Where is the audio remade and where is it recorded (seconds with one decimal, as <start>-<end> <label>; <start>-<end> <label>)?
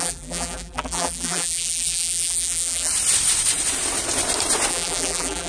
0.0-2.9 remade; 2.9-4.7 recorded; 4.7-5.5 remade